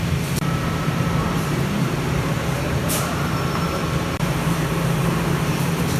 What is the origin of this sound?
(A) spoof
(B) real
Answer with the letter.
A